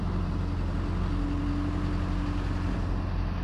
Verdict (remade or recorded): recorded